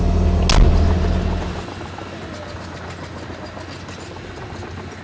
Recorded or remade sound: recorded